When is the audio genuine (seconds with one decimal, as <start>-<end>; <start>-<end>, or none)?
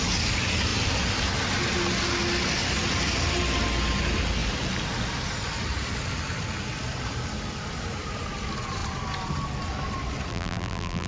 0.0-10.3